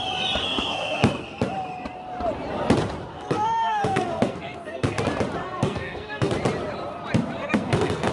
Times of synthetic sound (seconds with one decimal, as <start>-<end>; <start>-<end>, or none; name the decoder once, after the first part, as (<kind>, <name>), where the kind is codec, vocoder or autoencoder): 0.4-1.4 (codec, SNAC); 3.1-5.0; 5.4-6.3; 7.4-8.1

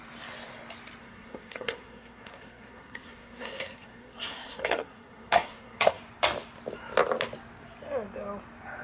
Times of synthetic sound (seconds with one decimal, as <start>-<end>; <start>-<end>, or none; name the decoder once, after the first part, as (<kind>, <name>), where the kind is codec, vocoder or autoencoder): 1.0-6.0 (codec, SNAC)

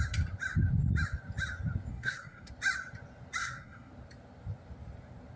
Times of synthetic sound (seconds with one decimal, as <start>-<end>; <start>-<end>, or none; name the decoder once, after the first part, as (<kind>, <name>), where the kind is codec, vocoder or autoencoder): 1.9-2.5 (codec, SNAC); 3.4-3.9

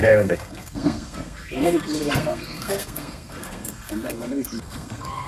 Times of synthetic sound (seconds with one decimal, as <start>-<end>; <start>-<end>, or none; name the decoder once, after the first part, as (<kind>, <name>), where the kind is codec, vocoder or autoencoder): 0.0-5.3 (codec, SNAC)

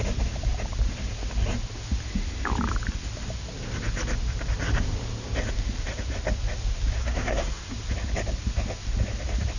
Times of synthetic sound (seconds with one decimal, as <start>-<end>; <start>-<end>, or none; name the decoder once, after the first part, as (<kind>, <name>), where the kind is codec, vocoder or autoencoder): 7.0-7.7 (codec, SNAC)

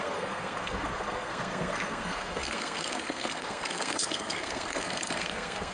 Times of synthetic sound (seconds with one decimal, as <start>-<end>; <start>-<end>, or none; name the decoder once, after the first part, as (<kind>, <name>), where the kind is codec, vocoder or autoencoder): 0.0-5.7 (codec, SNAC)

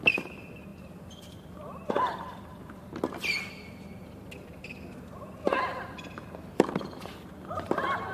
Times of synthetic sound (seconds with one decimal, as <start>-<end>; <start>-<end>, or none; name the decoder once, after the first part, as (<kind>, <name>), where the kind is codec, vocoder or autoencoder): none

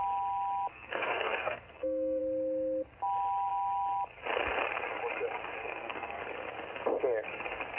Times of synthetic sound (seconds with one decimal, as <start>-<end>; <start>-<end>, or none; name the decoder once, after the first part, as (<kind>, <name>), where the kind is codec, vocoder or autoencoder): 0.7-2.2 (codec, SNAC); 5.6-6.2